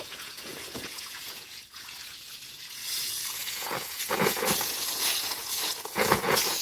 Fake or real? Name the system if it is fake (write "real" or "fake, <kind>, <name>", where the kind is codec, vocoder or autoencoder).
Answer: fake, vocoder, Vocos